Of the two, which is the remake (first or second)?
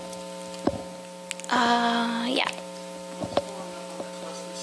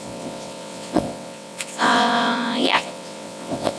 second